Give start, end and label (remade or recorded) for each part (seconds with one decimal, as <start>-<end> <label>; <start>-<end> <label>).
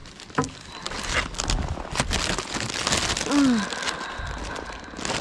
0.0-5.2 recorded